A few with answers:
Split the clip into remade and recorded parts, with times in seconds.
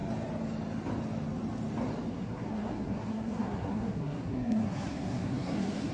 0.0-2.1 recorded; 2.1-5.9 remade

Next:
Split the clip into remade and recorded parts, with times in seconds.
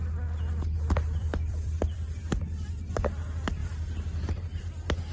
0.0-1.2 recorded; 1.2-2.2 remade; 2.2-5.1 recorded